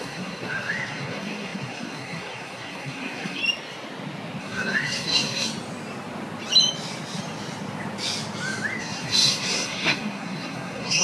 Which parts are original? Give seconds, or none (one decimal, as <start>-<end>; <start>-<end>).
3.4-4.4; 5.5-8.8